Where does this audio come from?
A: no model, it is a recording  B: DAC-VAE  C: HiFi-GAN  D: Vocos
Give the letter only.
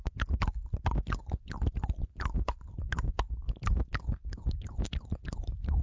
A